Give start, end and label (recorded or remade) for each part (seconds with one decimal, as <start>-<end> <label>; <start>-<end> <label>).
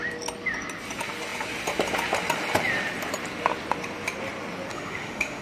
0.0-4.7 recorded; 4.7-5.4 remade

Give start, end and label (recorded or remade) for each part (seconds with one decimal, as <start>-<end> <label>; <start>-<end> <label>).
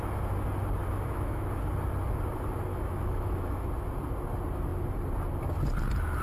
0.0-0.8 recorded; 0.8-1.4 remade; 1.4-2.7 recorded; 2.7-3.7 remade; 3.7-6.2 recorded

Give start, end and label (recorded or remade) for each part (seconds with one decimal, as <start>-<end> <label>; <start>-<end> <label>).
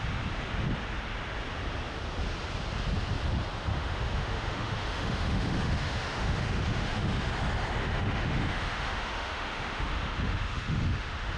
0.0-3.7 recorded; 3.7-7.3 remade; 7.3-7.8 recorded; 7.8-11.4 remade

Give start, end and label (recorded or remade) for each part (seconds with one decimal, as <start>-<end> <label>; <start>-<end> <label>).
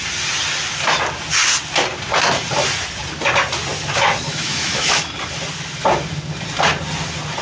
0.0-4.3 recorded; 4.3-5.1 remade; 5.1-7.4 recorded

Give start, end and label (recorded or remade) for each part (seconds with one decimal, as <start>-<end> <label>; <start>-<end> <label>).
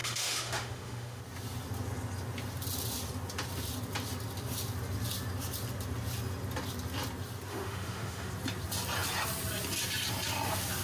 0.0-1.2 remade; 1.2-7.5 recorded; 7.5-8.3 remade; 8.3-10.8 recorded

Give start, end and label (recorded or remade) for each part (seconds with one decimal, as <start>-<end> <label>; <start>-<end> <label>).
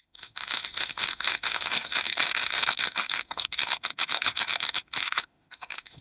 0.0-6.0 remade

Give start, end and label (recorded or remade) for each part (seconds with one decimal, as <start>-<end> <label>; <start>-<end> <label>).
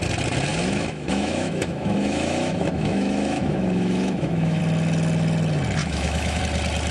0.0-0.5 recorded; 0.5-4.6 remade; 4.6-5.8 recorded; 5.8-6.4 remade; 6.4-6.9 recorded